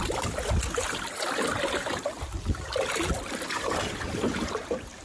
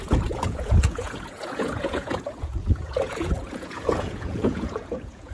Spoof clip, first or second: second